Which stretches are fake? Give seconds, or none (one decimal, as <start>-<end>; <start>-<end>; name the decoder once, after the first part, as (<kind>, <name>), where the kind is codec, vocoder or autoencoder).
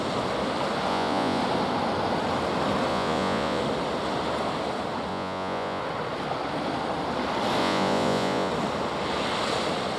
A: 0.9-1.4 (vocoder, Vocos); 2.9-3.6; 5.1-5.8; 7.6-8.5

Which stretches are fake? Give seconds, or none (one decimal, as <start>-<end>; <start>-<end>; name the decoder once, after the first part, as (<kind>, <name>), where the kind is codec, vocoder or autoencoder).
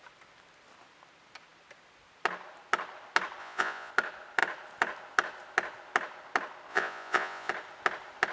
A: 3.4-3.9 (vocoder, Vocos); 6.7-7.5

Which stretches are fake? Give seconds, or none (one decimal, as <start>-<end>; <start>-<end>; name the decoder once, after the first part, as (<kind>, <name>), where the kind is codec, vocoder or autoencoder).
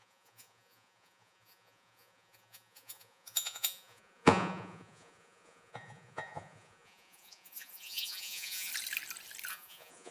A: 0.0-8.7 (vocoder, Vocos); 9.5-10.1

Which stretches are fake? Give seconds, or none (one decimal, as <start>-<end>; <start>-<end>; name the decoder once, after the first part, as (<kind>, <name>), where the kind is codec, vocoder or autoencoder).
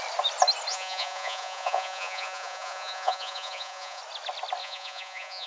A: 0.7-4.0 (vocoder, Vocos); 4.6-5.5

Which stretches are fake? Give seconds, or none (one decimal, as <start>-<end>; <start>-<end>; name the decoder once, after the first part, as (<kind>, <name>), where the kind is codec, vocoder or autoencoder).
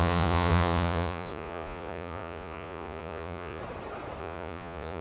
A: 0.0-3.6 (vocoder, Vocos); 4.2-5.0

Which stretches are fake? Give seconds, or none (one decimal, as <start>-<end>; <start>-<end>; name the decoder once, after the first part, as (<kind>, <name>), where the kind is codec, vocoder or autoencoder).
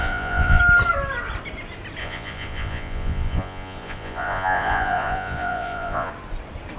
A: 0.0-0.6 (vocoder, Vocos); 2.0-6.1